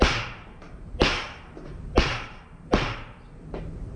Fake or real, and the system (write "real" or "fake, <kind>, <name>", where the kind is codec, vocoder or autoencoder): fake, vocoder, BigVGAN v2